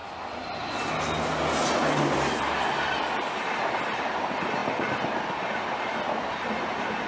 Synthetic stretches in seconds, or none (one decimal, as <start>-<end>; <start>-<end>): none